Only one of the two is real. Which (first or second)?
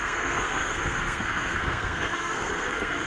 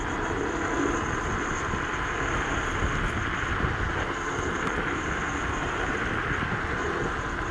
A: second